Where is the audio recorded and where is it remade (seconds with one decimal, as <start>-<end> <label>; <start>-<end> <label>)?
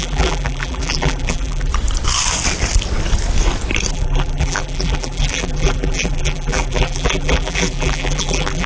0.0-1.7 remade; 1.7-3.9 recorded; 3.9-8.7 remade